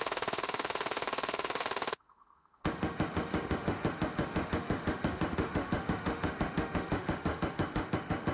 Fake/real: fake